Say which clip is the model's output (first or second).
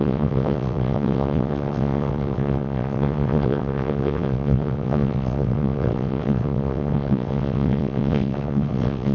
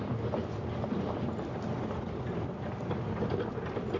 first